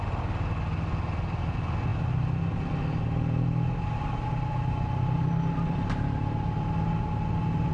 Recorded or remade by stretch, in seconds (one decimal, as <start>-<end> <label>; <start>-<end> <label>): 0.0-7.7 recorded